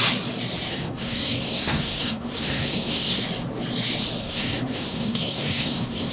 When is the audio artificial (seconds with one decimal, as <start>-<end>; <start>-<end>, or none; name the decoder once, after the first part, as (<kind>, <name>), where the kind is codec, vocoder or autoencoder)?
0.7-3.2 (codec, SNAC); 4.2-6.1